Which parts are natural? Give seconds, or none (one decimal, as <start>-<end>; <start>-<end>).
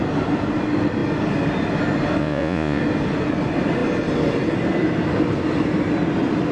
0.0-2.2; 2.8-6.5